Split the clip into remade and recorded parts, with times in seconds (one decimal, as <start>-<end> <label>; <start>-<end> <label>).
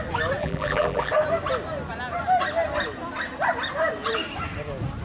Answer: 0.0-0.4 recorded; 0.4-1.1 remade; 1.1-5.0 recorded